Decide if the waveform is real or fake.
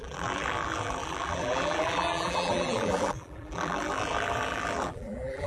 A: fake